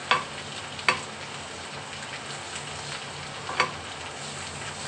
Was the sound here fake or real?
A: real